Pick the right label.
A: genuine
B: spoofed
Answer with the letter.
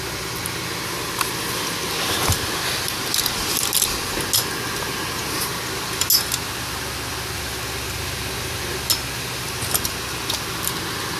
A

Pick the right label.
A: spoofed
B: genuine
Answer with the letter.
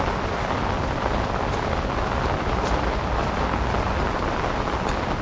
B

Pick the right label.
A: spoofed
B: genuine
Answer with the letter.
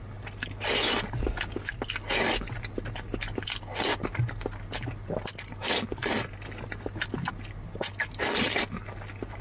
B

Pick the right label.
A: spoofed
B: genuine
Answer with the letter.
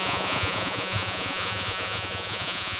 A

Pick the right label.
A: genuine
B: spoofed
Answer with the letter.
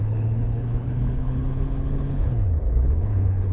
B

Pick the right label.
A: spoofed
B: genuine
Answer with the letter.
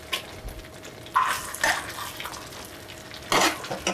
B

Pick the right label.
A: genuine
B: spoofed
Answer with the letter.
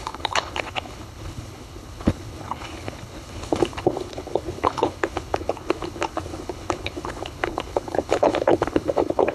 B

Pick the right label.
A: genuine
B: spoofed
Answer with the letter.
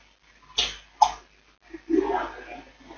A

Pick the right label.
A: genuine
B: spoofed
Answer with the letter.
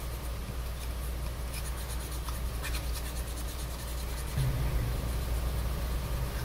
A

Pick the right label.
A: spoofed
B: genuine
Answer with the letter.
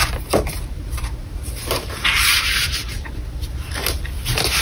A